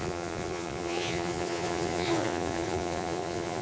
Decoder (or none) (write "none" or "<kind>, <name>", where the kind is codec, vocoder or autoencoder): vocoder, Vocos